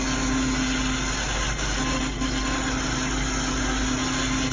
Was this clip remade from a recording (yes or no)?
no